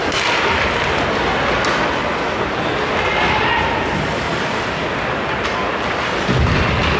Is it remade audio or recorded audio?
recorded